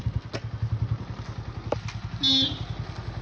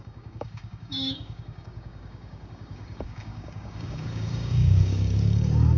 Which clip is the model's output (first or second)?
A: second